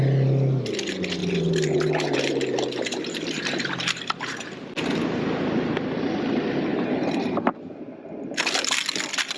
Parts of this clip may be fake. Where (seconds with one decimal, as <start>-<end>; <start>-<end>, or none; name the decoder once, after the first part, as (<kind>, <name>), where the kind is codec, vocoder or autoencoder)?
1.2-5.2 (vocoder, BigVGAN v2); 6.7-7.8